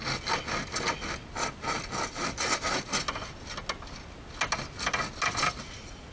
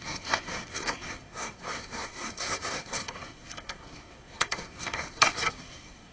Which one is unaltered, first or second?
first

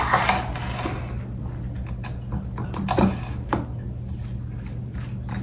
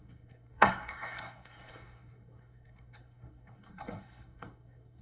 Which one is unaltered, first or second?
first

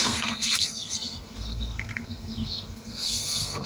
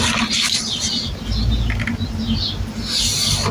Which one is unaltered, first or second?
second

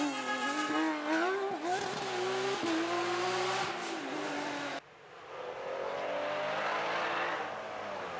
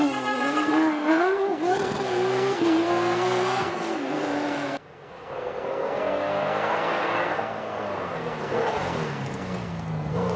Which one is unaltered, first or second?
first